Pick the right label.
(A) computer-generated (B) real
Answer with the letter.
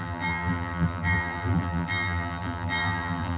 A